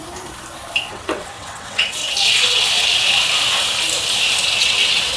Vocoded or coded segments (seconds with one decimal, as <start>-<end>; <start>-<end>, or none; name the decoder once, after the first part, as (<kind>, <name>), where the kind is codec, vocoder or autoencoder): 0.9-2.0 (vocoder, WaveNeXt); 4.6-5.2